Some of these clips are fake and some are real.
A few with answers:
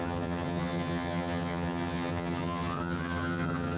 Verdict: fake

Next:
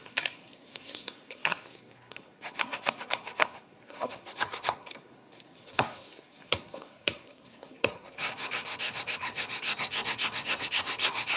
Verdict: fake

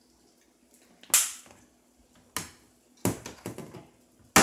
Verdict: real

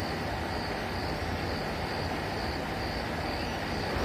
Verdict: real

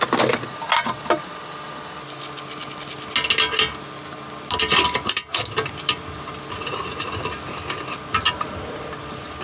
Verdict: real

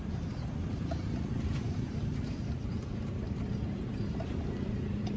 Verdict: fake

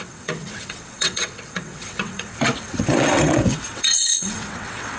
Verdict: fake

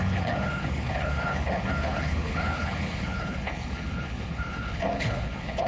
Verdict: fake